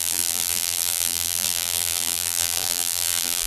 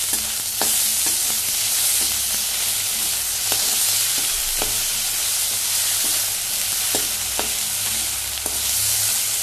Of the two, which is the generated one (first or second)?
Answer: first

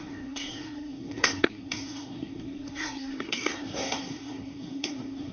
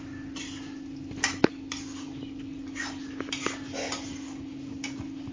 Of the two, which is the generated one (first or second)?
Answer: first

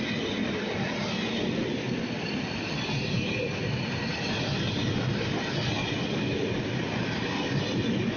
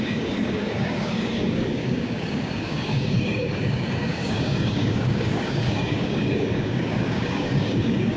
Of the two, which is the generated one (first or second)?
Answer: second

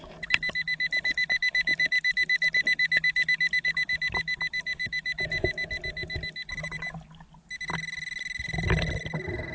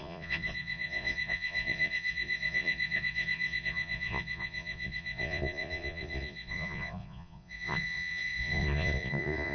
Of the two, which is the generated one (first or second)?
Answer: second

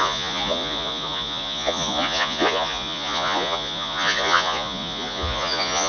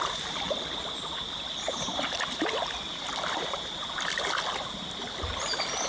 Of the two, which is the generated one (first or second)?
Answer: first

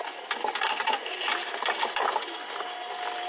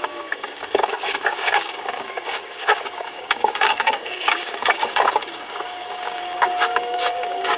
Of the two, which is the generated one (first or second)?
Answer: second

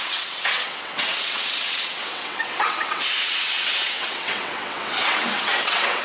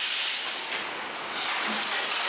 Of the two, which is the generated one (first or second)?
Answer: first